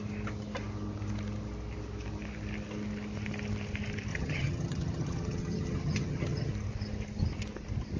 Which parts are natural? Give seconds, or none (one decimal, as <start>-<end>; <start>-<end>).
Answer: 0.0-4.1; 6.5-8.0